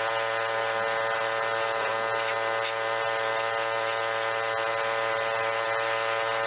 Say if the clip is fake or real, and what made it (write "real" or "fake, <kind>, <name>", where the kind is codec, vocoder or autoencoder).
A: real